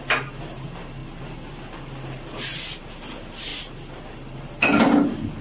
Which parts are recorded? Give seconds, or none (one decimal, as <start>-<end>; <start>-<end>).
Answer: 0.0-5.4